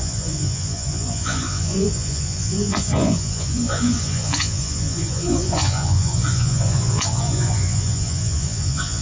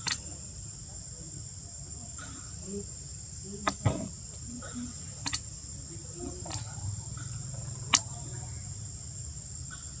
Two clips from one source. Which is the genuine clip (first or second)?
second